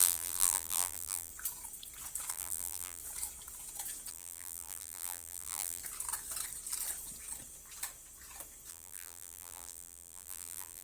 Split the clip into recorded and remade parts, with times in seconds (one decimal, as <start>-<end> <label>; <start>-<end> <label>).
0.0-1.3 remade; 1.3-2.3 recorded; 2.3-3.0 remade; 3.0-4.1 recorded; 4.1-5.8 remade; 5.8-8.7 recorded; 8.7-10.8 remade